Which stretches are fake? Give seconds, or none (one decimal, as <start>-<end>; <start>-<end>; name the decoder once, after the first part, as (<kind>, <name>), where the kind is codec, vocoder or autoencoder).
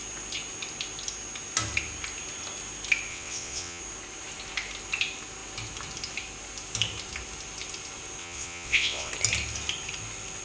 3.1-3.8 (vocoder, WaveNeXt); 8.2-9.1